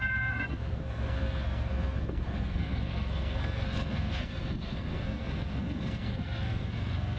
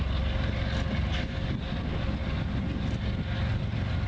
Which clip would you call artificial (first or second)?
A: first